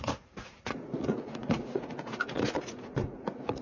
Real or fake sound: fake